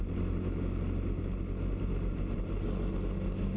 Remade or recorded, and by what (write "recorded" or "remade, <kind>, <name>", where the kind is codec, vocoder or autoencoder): recorded